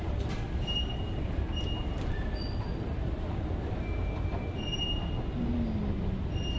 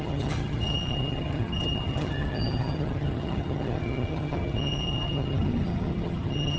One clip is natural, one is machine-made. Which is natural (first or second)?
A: first